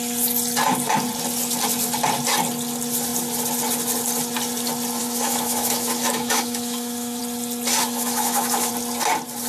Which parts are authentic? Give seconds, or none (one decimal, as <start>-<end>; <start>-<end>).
0.0-5.0; 7.2-7.8; 8.7-9.5